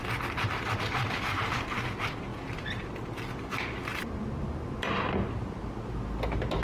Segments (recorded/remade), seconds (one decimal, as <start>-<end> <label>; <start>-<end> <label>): 0.0-3.9 recorded; 3.9-4.8 remade; 4.8-6.6 recorded